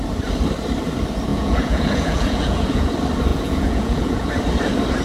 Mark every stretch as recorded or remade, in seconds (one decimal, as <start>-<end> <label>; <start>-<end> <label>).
0.0-1.3 recorded; 1.3-2.9 remade; 2.9-3.3 recorded; 3.3-4.3 remade; 4.3-5.0 recorded